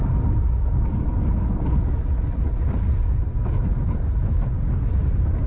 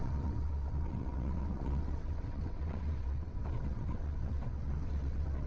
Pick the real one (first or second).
first